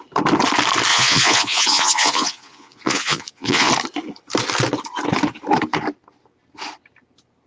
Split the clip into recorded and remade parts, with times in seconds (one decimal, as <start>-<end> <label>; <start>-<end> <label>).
0.0-0.9 recorded; 0.9-3.7 remade; 3.7-7.5 recorded